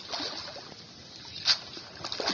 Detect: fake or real real